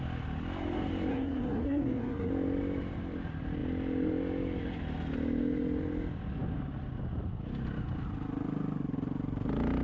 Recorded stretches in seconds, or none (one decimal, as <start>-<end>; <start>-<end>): 0.0-1.1; 2.3-9.8